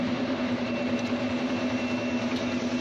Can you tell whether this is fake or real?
fake